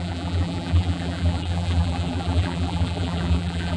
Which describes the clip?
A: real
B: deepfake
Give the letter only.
B